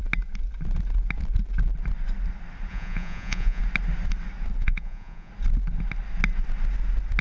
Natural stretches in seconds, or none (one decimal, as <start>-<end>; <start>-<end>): 0.0-2.7; 3.6-4.6; 5.3-7.2

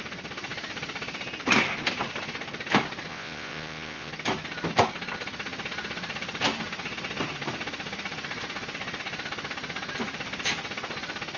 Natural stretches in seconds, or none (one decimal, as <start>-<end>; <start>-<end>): 0.0-3.1; 4.1-11.4

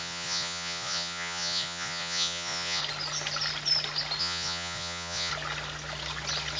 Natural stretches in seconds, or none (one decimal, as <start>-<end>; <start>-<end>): 2.8-4.2; 5.3-6.6

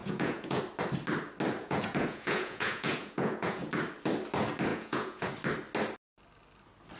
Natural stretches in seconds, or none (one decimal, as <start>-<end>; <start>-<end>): 0.6-1.6; 3.7-4.7; 5.3-7.0

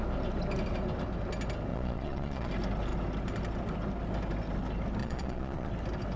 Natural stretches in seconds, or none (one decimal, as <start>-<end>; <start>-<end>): 0.0-1.7; 2.5-5.0; 5.7-6.2

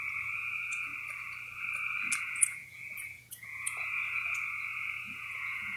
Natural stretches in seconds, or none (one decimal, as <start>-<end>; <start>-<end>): 0.9-2.2

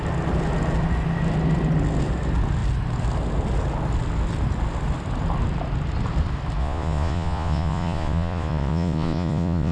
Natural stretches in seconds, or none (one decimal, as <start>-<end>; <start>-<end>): 0.0-6.6

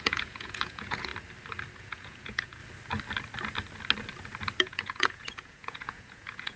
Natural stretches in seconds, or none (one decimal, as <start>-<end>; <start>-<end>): 1.1-1.8; 2.6-4.6